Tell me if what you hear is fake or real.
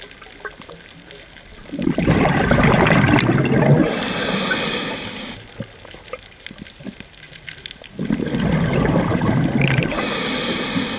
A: real